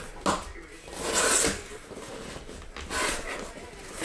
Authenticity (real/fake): real